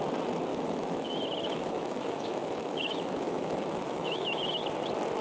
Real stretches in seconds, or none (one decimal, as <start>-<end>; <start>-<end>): 0.0-0.5; 1.1-1.5; 4.6-5.2